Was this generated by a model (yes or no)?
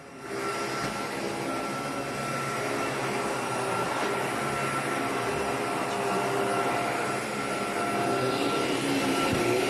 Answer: no